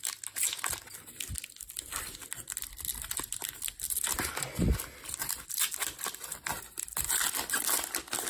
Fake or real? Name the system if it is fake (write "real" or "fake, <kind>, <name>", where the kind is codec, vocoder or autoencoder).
real